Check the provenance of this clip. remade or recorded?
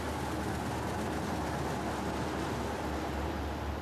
recorded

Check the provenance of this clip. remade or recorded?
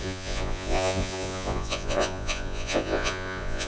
remade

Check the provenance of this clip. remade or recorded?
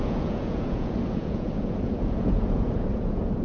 remade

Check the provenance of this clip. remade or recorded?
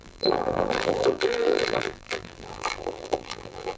remade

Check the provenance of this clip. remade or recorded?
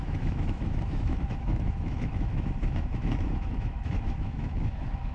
remade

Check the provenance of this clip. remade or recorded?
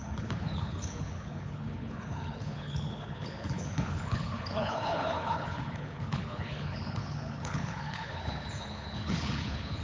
remade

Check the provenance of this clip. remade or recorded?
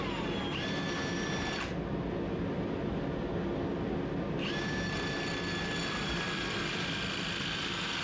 recorded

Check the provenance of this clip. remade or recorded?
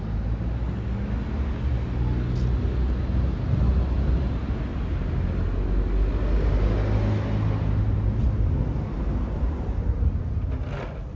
recorded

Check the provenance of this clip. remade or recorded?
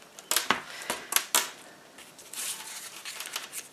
recorded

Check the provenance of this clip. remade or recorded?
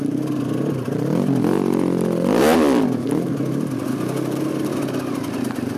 recorded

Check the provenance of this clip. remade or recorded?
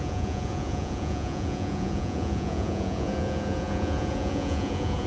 remade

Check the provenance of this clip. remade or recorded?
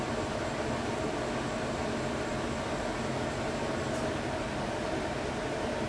recorded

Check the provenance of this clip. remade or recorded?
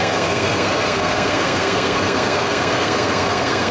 remade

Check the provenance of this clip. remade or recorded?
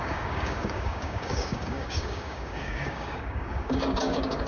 remade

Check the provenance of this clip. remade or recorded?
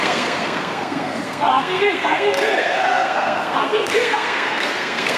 remade